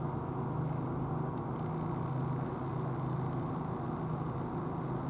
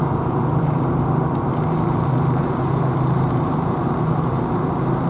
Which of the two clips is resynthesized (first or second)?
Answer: second